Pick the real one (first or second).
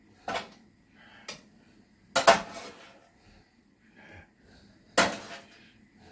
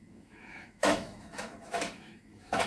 first